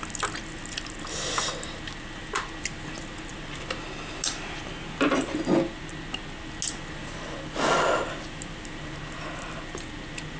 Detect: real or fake real